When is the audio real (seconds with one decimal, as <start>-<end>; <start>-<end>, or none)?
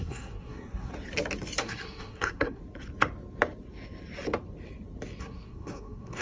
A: 0.9-1.6; 2.6-5.2